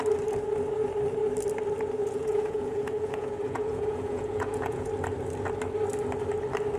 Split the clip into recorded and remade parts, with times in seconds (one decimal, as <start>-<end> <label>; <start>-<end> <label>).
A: 0.0-2.0 recorded; 2.0-4.9 remade; 4.9-6.8 recorded